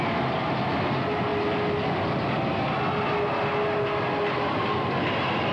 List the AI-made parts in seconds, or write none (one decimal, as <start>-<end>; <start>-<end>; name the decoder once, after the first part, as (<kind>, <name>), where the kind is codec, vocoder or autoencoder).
none